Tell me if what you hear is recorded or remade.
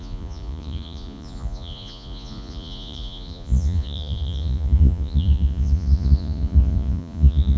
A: remade